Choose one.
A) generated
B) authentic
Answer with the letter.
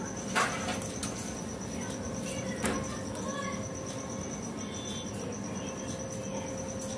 B